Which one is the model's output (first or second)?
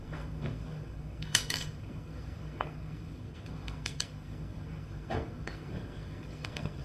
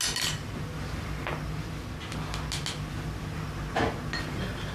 first